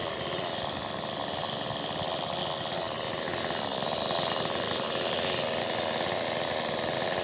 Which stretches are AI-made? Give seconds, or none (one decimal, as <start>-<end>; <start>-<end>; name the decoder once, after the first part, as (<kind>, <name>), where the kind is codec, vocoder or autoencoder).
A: none